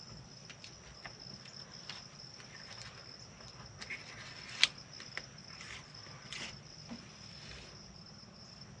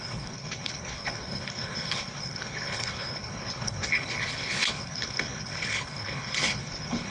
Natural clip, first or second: first